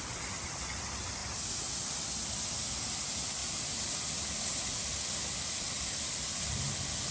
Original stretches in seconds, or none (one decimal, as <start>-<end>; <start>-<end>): 0.0-1.2; 2.8-3.4; 3.9-4.5; 6.2-7.1